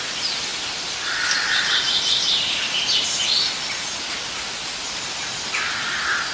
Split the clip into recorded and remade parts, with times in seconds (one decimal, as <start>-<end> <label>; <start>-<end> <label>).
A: 0.0-6.3 recorded